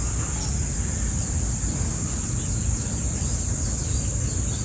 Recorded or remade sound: recorded